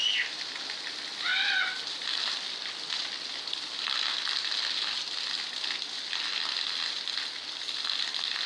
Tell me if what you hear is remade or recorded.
recorded